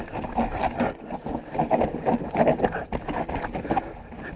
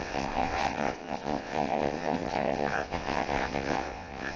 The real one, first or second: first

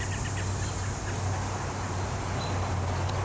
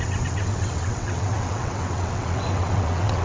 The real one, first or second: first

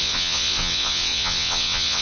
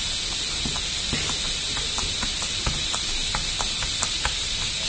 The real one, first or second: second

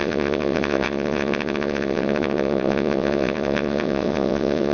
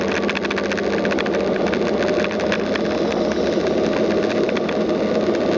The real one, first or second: second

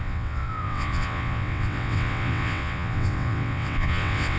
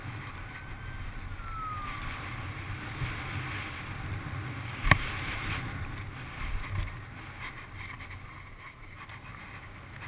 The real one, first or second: second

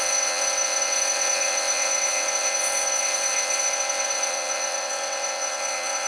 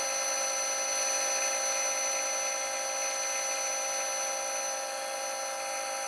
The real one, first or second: second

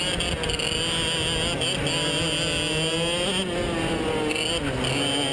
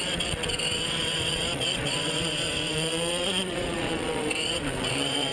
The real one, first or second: first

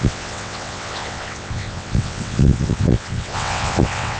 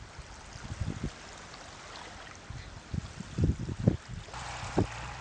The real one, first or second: second